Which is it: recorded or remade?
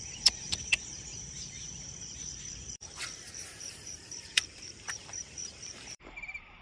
remade